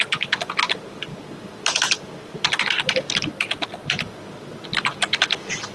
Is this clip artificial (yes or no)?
no